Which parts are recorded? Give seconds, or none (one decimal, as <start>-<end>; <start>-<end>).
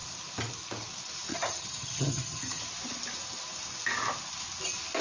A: 0.0-1.3; 2.6-5.0